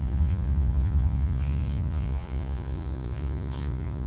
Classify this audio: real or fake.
fake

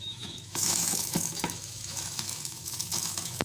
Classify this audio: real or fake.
fake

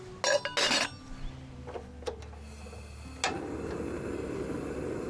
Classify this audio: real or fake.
real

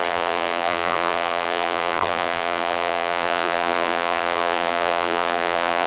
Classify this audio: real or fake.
fake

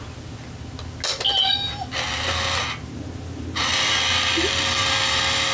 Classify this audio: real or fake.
real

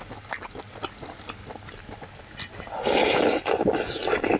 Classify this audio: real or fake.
real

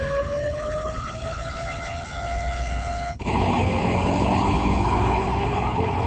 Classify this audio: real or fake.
fake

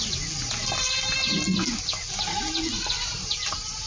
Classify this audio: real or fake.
real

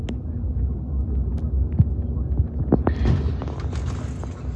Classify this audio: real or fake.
real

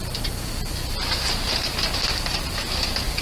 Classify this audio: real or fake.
real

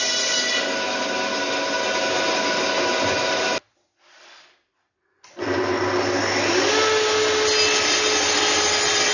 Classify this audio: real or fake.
real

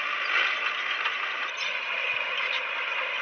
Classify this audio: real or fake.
real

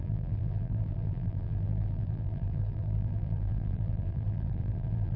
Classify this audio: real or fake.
fake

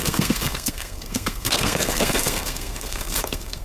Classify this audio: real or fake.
fake